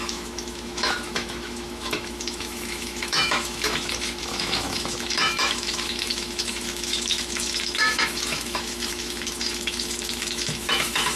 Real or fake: fake